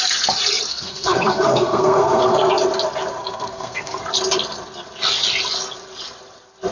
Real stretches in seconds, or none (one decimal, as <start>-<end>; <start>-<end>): 0.0-0.7; 2.5-3.2; 4.0-6.7